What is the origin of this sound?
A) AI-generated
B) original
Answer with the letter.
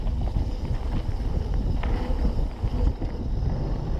B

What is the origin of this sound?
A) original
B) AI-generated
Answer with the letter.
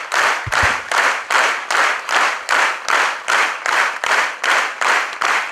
A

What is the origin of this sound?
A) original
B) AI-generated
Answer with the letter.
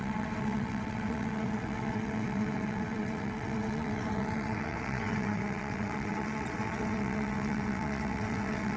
B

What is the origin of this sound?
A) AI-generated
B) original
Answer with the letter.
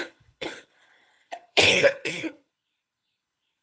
A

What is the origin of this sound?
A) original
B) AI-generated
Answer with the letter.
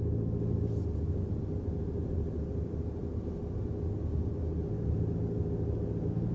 A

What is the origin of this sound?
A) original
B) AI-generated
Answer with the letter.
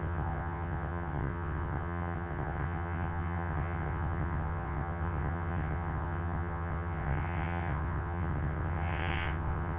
B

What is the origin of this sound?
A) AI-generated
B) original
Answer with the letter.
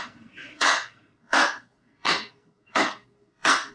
A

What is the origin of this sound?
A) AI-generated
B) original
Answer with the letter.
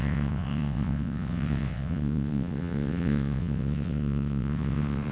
A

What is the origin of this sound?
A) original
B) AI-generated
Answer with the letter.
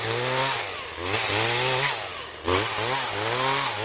A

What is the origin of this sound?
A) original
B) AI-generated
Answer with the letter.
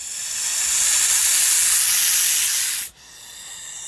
A